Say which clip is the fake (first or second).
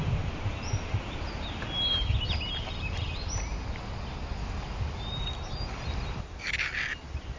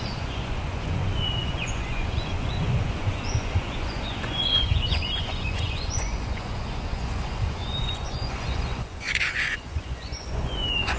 second